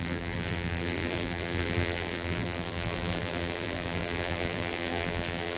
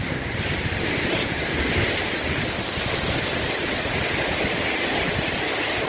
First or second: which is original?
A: second